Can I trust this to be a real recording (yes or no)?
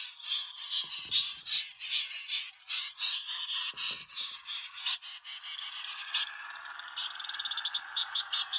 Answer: yes